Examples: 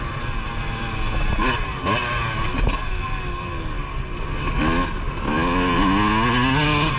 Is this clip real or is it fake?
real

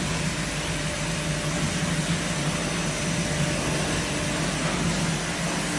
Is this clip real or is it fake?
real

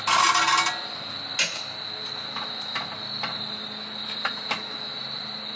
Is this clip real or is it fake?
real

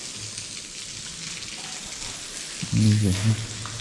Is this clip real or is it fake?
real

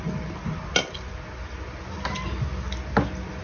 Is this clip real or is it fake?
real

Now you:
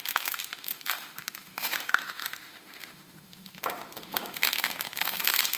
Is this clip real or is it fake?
fake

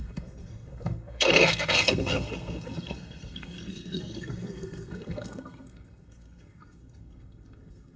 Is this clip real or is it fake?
fake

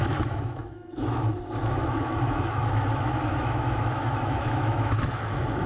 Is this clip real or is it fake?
fake